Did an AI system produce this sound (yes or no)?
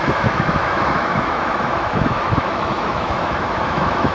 yes